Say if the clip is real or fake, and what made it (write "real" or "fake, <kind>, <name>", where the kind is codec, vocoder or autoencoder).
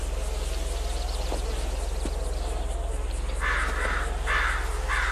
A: real